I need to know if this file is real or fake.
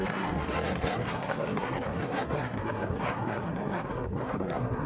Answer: fake